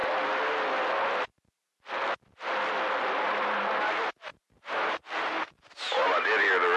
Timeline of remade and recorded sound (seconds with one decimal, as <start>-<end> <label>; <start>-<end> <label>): 0.0-3.0 recorded; 3.0-3.6 remade; 3.6-4.3 recorded; 4.3-6.3 remade; 6.3-6.8 recorded